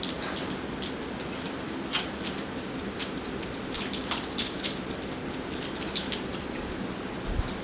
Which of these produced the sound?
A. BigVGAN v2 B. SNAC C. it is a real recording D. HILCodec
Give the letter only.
C